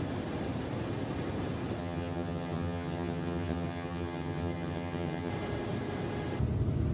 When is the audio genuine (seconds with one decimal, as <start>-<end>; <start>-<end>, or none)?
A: 0.0-1.8; 5.3-6.9